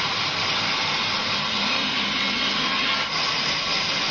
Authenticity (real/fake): real